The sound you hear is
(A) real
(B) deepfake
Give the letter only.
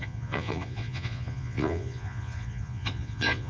B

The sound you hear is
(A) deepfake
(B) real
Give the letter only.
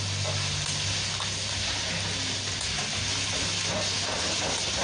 B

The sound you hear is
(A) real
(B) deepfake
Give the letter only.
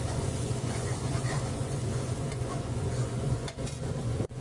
B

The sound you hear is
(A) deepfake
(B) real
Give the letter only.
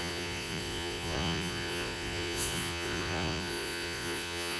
A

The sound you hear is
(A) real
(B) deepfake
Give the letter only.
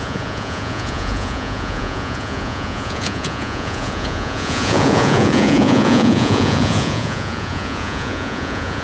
B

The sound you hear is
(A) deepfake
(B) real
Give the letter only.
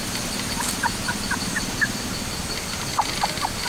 B